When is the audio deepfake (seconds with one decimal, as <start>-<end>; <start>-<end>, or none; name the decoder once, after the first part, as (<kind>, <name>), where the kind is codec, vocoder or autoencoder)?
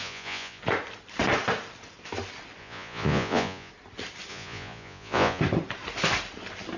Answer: 0.0-0.6 (vocoder, Vocos); 2.6-3.7; 4.3-5.4